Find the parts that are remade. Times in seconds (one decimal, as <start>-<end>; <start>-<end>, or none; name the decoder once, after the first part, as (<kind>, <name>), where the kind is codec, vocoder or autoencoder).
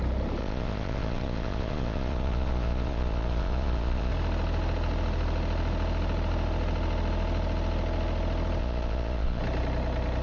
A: 0.4-4.1 (vocoder, Vocos); 8.6-9.4